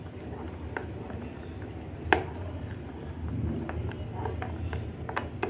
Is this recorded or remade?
recorded